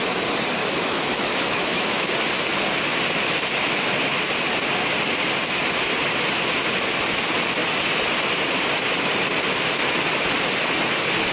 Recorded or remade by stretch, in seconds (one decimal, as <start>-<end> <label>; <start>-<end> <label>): 0.0-0.6 recorded; 0.6-2.1 remade; 2.1-11.3 recorded